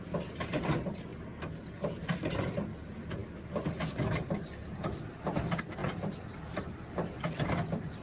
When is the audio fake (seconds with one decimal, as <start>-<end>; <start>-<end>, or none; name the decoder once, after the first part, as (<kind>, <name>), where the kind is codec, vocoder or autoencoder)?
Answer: 0.0-1.1 (vocoder, BigVGAN v2); 1.7-8.0